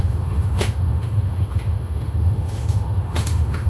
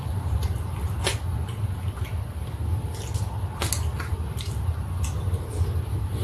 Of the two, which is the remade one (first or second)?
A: first